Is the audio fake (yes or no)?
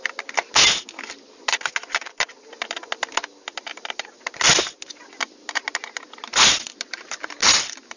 no